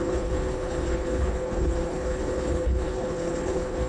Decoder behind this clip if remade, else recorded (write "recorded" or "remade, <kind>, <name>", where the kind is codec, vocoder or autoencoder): remade, codec, HILCodec